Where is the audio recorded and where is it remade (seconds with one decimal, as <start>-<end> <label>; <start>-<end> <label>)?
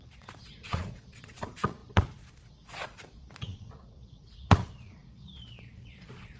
0.0-6.4 remade